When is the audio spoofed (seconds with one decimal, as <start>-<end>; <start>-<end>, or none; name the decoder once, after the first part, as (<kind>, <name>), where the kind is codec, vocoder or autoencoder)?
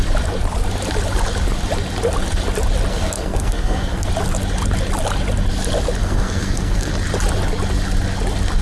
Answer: 2.9-4.1 (codec, SNAC); 6.0-6.9